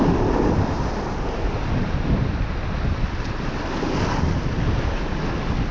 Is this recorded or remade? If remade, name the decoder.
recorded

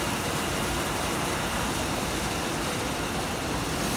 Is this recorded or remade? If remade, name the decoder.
recorded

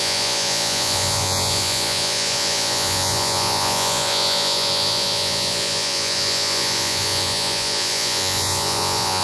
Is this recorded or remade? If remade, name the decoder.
remade, vocoder, Vocos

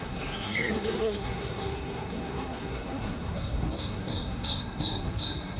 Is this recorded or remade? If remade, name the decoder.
remade, codec, SNAC